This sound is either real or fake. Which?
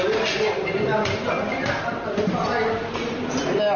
real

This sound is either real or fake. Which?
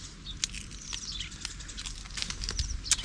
real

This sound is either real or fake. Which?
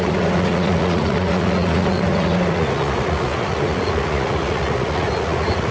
fake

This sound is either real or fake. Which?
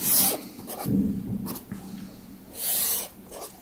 fake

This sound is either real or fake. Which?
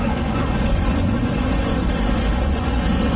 fake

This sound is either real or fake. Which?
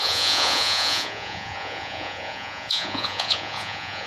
fake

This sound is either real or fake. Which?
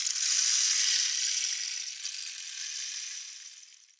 real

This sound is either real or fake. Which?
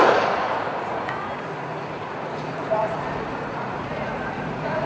fake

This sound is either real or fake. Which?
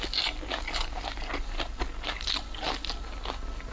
real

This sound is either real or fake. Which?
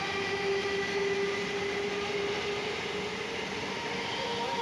real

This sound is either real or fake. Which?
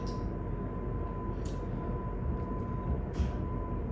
real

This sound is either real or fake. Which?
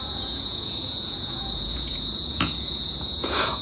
fake